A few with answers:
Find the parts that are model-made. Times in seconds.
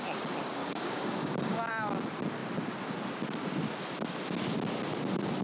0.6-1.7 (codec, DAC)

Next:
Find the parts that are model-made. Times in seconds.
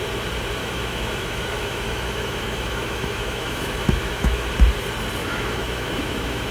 0.6-4.5 (autoencoder, DAC-VAE); 5.2-6.5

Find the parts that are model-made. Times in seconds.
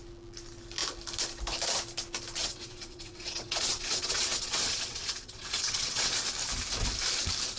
2.4-6.1 (vocoder, WaveNeXt)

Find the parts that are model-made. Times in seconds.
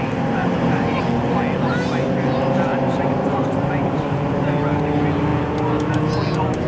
0.4-1.0 (vocoder, BigVGAN v2); 2.7-4.5